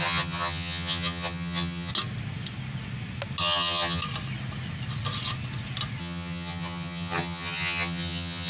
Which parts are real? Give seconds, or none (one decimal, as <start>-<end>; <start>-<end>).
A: 1.9-3.4; 4.0-6.0